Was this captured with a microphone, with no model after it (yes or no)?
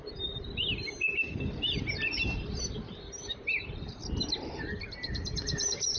yes